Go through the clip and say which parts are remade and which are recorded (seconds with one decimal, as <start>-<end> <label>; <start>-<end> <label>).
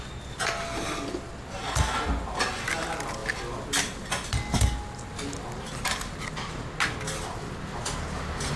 0.0-8.6 recorded